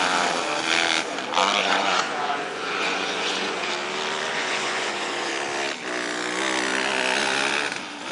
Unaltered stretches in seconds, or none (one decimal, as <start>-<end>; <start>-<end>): 0.0-1.6; 3.7-4.3; 5.3-8.1

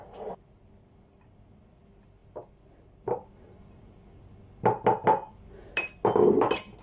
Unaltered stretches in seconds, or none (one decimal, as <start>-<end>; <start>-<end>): 0.0-6.8

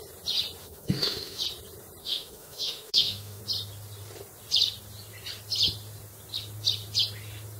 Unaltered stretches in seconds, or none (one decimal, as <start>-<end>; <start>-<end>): 0.0-0.6; 1.4-2.0; 3.4-7.6

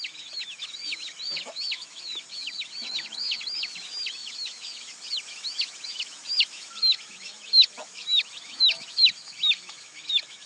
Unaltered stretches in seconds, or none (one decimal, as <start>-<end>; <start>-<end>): none